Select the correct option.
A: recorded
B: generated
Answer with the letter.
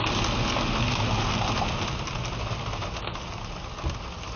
A